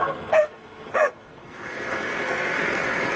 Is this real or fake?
fake